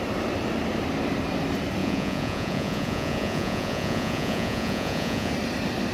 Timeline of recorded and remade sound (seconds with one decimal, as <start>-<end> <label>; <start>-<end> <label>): 0.0-1.8 recorded; 1.8-5.3 remade; 5.3-5.9 recorded